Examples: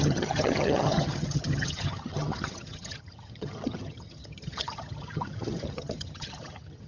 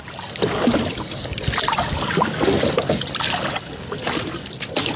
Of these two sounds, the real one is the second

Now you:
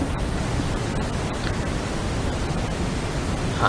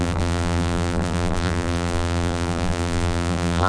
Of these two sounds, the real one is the first